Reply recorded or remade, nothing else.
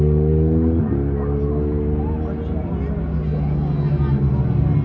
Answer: recorded